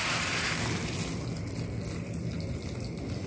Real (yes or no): yes